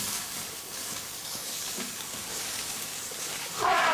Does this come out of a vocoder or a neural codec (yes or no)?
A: yes